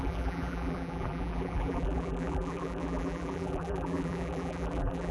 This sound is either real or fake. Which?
fake